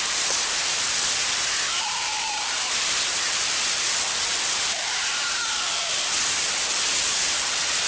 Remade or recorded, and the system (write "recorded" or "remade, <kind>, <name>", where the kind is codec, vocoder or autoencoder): recorded